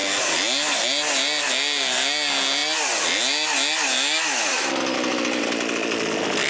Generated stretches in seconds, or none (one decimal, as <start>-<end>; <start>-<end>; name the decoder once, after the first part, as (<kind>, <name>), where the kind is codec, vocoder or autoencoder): none